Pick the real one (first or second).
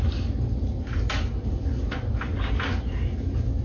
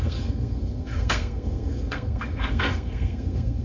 first